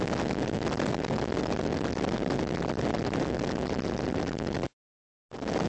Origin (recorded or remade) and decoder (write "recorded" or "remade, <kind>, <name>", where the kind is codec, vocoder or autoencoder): recorded